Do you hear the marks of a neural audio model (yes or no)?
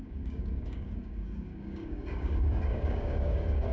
yes